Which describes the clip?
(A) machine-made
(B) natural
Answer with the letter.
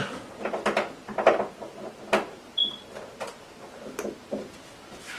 B